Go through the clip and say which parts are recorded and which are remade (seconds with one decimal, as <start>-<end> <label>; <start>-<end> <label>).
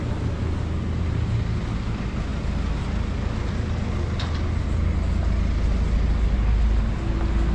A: 0.0-7.5 recorded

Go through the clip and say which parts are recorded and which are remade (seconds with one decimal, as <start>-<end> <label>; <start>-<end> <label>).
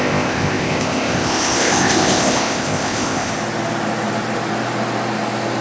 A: 0.0-3.3 remade; 3.3-5.6 recorded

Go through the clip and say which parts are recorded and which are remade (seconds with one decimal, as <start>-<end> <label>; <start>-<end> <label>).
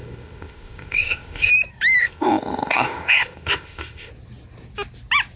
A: 0.0-1.5 remade; 1.5-2.0 recorded; 2.0-4.1 remade; 4.1-5.4 recorded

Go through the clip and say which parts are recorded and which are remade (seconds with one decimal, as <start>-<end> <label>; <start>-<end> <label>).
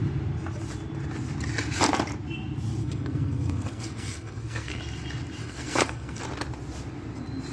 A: 0.0-2.8 recorded; 2.8-4.8 remade; 4.8-5.4 recorded; 5.4-6.2 remade; 6.2-7.5 recorded